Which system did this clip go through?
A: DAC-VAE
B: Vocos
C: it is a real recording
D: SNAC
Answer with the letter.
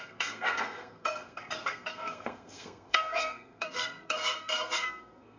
D